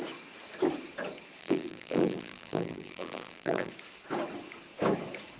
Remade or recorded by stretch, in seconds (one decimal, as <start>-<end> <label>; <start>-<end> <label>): 0.0-1.4 recorded; 1.4-3.7 remade; 3.7-5.4 recorded